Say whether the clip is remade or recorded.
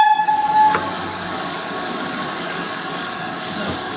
remade